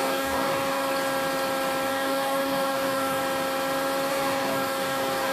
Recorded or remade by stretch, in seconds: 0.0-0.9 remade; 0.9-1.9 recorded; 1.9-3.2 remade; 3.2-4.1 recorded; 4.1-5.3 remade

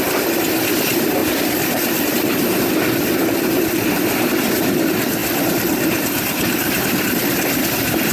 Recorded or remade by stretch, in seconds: 0.0-1.2 recorded; 1.2-2.1 remade; 2.1-5.2 recorded; 5.2-6.8 remade; 6.8-8.1 recorded

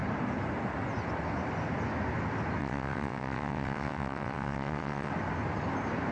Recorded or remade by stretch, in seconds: 0.0-2.6 recorded; 2.6-5.1 remade; 5.1-6.1 recorded

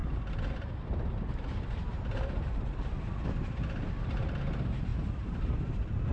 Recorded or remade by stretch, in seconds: 0.0-6.1 recorded